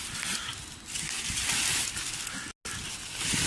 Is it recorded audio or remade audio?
recorded